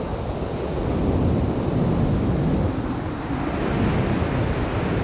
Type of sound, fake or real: real